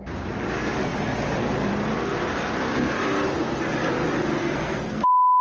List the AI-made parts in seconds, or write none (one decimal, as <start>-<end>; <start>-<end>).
4.4-5.0